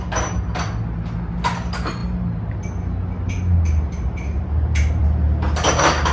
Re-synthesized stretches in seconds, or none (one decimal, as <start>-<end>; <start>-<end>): 4.3-5.0